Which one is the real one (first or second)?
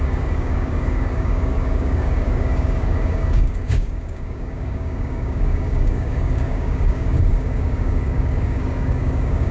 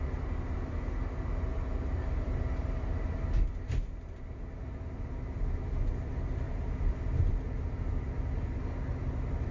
second